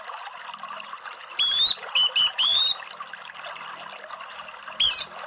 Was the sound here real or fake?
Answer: fake